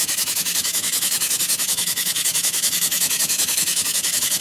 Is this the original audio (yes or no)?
no